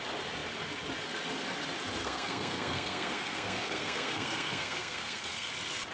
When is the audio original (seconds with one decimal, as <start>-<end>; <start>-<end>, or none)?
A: 0.0-2.0; 5.5-5.9